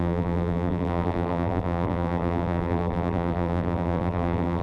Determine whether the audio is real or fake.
fake